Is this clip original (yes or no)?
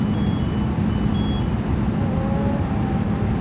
yes